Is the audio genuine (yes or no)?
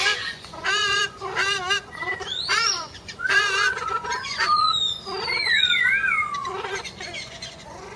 no